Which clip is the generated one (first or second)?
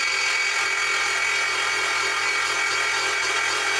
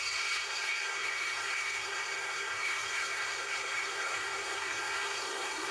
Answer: second